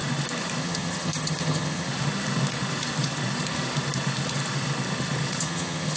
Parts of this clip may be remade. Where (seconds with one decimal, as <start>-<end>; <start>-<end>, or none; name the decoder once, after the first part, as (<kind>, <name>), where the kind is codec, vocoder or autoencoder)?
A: 0.6-1.9 (vocoder, HiFi-GAN); 5.4-6.0